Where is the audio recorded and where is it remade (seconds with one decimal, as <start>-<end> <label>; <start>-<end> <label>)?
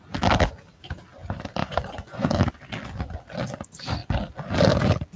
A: 0.0-1.6 recorded; 1.6-2.3 remade; 2.3-5.2 recorded